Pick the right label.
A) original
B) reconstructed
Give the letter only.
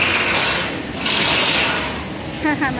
A